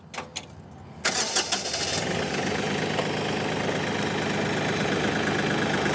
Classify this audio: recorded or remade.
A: recorded